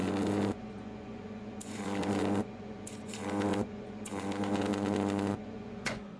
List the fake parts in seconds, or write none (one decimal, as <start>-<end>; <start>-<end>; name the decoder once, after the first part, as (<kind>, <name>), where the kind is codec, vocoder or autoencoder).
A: 0.0-4.7 (vocoder, Vocos); 5.4-6.2